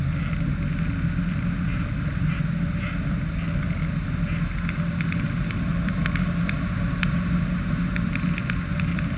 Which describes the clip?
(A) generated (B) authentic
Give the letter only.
B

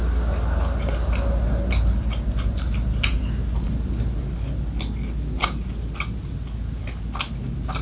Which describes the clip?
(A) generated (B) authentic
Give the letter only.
B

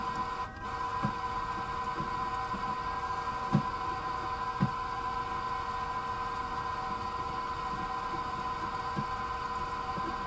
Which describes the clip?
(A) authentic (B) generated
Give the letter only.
A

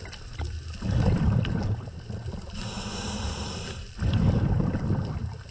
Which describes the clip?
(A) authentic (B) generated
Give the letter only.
B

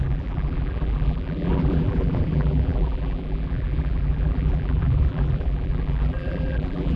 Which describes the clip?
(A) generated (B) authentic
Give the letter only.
A